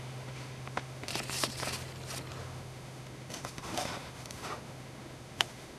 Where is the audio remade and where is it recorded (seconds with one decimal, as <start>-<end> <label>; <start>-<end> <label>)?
0.0-1.1 remade; 1.1-2.4 recorded; 2.4-5.8 remade